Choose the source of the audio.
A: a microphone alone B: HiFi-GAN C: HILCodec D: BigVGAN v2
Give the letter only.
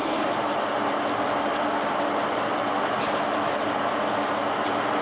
A